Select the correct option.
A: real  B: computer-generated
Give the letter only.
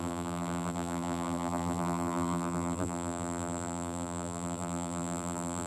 B